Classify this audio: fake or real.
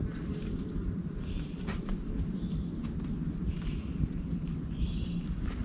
real